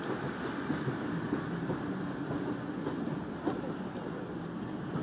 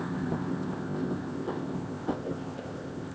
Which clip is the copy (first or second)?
second